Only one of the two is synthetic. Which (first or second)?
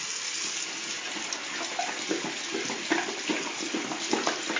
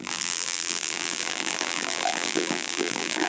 second